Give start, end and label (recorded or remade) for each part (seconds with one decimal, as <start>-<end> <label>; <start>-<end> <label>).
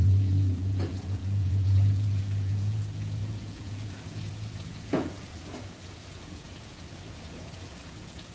0.0-8.3 remade